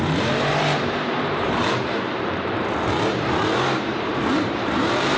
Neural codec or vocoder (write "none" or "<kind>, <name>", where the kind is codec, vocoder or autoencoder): vocoder, BigVGAN v2